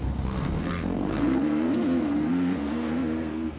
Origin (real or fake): fake